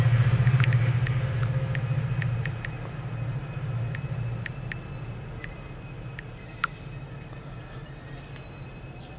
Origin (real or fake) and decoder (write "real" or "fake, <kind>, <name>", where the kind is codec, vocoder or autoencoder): real